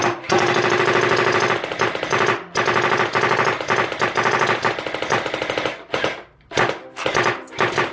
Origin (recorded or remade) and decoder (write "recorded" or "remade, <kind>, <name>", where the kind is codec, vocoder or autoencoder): recorded